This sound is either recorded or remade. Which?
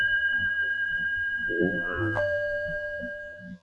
remade